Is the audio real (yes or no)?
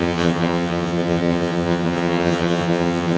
no